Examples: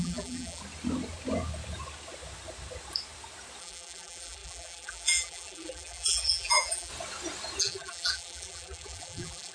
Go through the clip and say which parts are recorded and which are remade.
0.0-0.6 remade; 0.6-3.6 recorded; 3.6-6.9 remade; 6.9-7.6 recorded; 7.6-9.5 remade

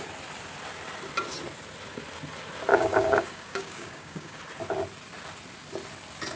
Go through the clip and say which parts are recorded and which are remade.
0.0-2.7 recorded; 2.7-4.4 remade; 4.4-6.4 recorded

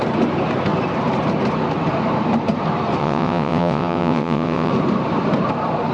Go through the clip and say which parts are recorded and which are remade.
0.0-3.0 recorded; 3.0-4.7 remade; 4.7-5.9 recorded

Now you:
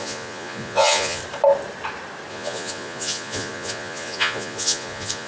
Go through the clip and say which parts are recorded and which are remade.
0.0-1.2 remade; 1.2-2.3 recorded; 2.3-5.3 remade

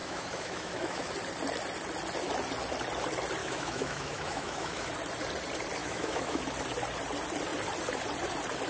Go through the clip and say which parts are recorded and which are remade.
0.0-1.1 remade; 1.1-3.4 recorded; 3.4-4.9 remade; 4.9-5.8 recorded; 5.8-6.4 remade; 6.4-8.7 recorded